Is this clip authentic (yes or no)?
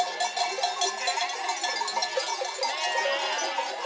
yes